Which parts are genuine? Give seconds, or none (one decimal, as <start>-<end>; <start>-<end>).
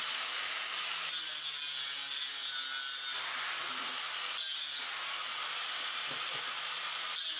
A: 0.0-7.4